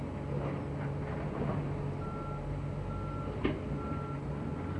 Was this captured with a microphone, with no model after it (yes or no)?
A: yes